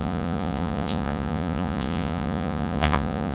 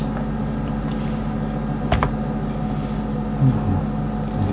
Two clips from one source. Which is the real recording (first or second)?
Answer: second